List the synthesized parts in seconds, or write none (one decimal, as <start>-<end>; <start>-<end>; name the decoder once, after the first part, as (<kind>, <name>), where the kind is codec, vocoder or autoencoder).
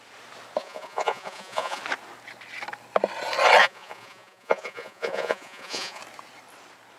0.6-1.8 (vocoder, Vocos); 3.6-6.0